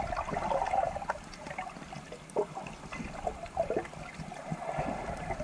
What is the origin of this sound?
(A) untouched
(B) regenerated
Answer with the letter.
A